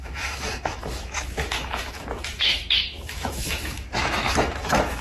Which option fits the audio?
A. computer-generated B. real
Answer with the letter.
A